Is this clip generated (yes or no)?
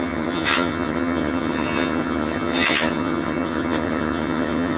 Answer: yes